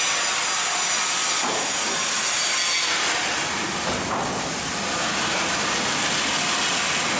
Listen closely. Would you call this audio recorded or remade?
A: recorded